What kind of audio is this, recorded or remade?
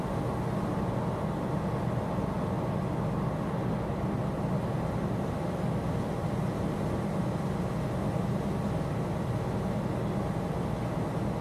recorded